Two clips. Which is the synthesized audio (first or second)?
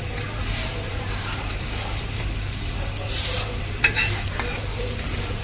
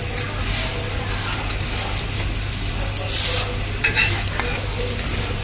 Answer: first